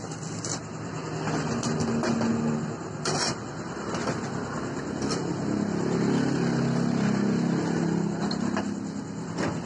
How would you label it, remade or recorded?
recorded